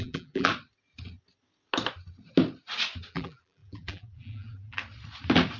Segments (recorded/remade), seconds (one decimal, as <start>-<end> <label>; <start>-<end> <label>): 0.0-0.5 remade; 0.5-3.1 recorded; 3.1-4.8 remade; 4.8-5.6 recorded